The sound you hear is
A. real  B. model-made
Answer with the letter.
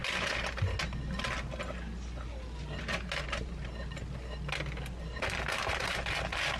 A